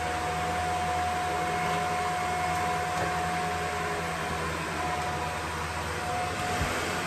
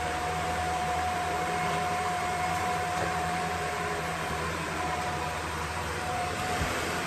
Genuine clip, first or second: first